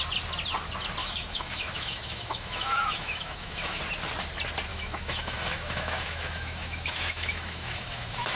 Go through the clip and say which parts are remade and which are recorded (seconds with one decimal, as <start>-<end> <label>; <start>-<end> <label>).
0.0-1.0 recorded; 1.0-3.8 remade; 3.8-4.7 recorded; 4.7-8.4 remade